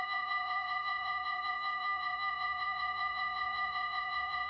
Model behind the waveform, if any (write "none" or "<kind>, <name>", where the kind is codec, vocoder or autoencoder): vocoder, Vocos